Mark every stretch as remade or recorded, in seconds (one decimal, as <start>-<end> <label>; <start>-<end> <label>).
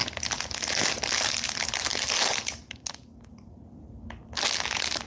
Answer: 0.0-5.1 recorded